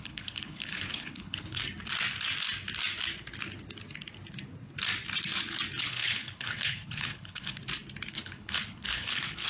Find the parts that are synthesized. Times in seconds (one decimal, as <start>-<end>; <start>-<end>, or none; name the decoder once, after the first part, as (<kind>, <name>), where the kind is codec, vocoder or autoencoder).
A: 0.0-1.6 (codec, HILCodec); 5.8-7.6; 8.1-9.5